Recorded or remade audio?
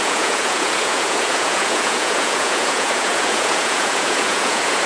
remade